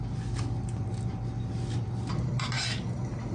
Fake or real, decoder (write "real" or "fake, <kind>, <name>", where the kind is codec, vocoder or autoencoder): real